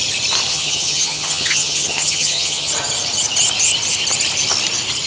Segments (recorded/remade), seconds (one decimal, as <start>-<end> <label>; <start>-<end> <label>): 0.0-0.5 recorded; 0.5-2.7 remade; 2.7-5.1 recorded